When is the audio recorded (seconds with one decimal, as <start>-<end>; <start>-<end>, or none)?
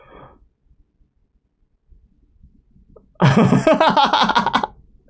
0.0-5.1